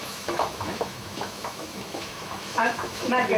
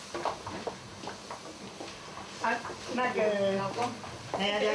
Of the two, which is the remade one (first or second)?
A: first